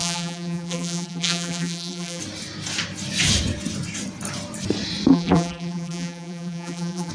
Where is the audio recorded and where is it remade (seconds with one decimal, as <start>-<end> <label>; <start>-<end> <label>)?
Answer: 0.0-2.2 remade; 2.2-5.1 recorded; 5.1-7.1 remade